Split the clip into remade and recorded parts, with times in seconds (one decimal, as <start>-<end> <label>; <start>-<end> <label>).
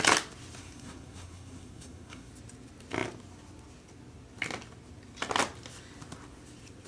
0.0-0.6 recorded; 0.6-2.3 remade; 2.3-6.9 recorded